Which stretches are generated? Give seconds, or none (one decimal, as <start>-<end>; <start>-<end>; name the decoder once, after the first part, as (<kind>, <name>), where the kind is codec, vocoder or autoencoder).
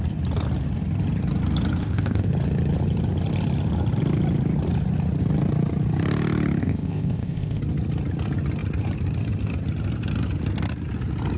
1.8-2.3 (codec, ZipCodec); 6.6-7.6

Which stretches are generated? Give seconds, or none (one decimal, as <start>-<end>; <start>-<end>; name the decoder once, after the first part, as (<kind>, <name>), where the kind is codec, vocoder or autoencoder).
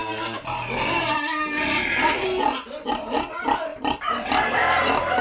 0.0-3.0 (vocoder, BigVGAN v2); 3.7-4.3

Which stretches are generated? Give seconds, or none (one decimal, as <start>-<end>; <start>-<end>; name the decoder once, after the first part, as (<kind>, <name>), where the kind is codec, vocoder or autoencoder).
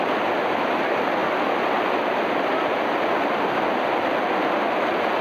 none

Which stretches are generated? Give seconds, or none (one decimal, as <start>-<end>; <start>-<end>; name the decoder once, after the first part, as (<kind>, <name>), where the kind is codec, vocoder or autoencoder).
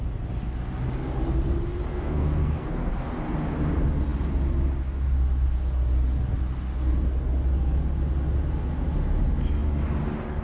1.9-2.9 (codec, SNAC)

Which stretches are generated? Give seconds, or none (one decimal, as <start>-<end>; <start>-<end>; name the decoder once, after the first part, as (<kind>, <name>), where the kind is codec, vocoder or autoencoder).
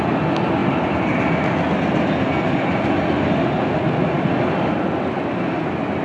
none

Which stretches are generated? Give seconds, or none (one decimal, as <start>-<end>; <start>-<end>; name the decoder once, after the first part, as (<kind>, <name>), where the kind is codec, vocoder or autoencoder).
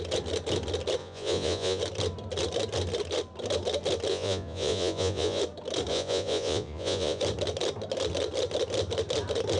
1.0-1.8 (vocoder, Vocos); 4.1-5.4; 5.9-7.2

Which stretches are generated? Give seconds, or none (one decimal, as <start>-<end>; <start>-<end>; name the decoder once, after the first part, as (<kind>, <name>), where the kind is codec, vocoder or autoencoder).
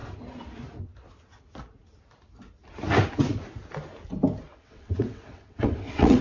4.5-6.2 (vocoder, WaveNeXt)